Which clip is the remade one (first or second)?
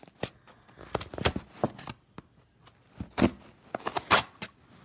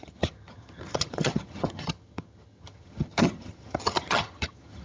second